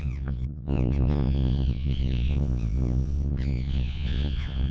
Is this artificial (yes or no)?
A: yes